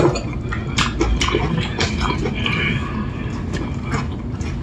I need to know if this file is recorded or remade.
recorded